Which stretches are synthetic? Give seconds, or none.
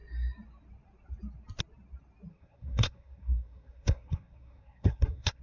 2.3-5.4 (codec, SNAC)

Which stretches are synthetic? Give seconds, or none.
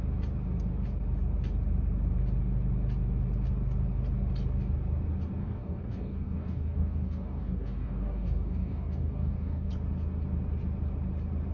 5.4-9.7 (codec, DAC)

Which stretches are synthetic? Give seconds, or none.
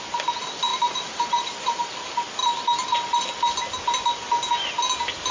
0.7-1.8 (vocoder, BigVGAN v2)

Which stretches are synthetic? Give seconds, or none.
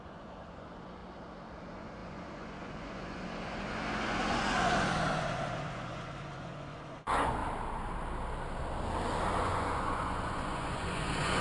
0.0-1.0 (vocoder, Vocos); 1.6-7.4; 9.4-11.4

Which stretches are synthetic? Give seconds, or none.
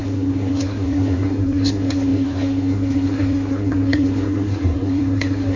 0.0-5.6 (codec, SNAC)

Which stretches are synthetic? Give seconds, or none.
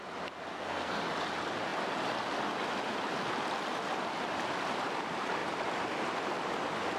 0.5-1.0 (codec, SNAC)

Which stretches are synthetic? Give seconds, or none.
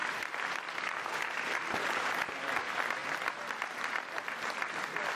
0.0-2.2 (vocoder, BigVGAN v2)